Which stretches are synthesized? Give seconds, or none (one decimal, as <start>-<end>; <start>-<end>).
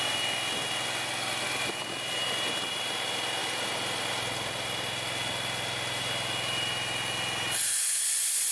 none